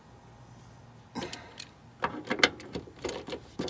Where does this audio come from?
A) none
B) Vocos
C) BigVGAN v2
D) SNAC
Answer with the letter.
A